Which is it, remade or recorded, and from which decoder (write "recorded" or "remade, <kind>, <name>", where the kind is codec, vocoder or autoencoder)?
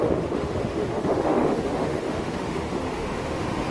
remade, autoencoder, DAC-VAE